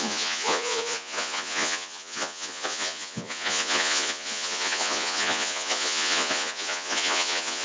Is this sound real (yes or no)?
no